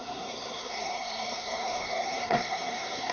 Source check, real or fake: fake